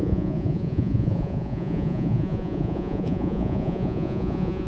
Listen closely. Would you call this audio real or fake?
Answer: fake